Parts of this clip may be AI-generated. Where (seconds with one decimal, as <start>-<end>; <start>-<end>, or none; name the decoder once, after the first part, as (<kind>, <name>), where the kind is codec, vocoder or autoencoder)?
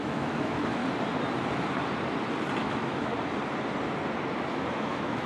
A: 0.0-0.8 (autoencoder, DAC-VAE); 2.6-3.1; 4.5-5.3